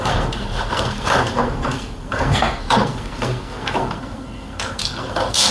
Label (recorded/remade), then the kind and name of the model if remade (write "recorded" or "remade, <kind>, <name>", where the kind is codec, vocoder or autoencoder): remade, codec, SNAC